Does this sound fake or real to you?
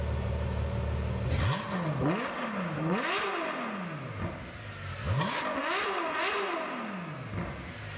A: real